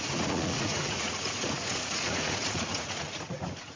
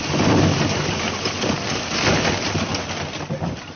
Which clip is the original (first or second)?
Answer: second